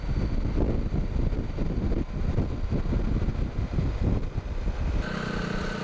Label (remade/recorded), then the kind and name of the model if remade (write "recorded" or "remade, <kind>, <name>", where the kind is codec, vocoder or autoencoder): recorded